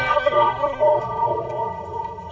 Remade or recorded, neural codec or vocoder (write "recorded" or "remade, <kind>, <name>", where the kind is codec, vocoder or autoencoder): remade, codec, SNAC